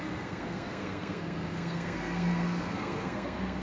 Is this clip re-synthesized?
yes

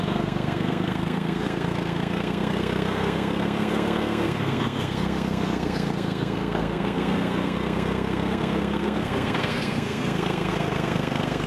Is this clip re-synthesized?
yes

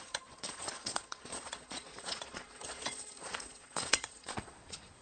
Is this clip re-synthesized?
yes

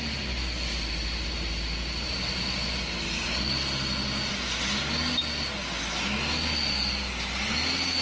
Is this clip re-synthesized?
no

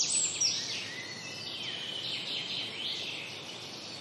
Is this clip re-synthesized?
no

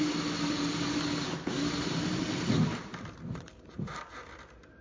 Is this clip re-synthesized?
no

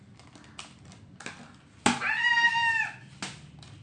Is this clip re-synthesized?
no